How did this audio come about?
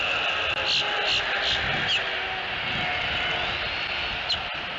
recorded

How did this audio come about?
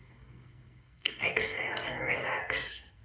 remade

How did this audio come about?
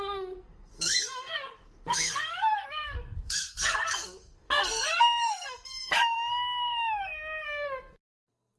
remade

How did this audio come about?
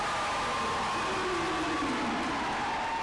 recorded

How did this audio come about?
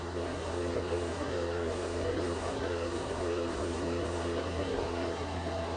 remade